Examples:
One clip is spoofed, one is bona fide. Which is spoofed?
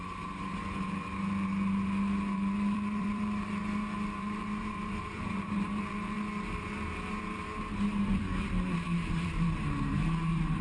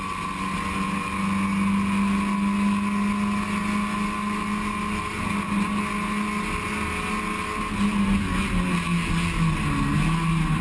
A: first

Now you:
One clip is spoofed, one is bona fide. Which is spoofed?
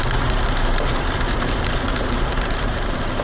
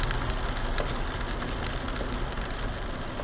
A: first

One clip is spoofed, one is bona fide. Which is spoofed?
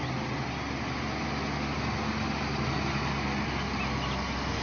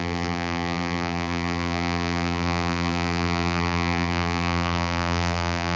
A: second